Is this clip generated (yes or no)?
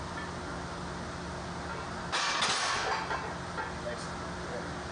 no